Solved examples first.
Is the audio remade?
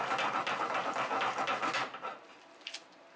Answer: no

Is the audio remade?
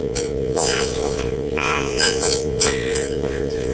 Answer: yes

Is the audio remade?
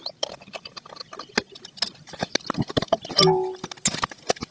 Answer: no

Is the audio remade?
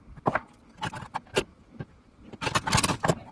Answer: no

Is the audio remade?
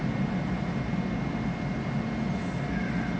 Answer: no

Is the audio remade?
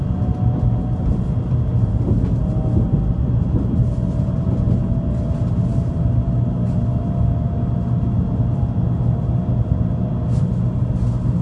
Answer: no